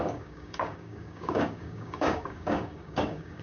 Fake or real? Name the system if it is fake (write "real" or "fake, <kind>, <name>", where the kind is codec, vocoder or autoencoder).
fake, codec, DAC